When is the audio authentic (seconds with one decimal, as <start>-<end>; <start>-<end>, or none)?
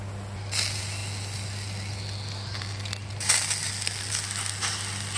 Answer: 0.0-5.2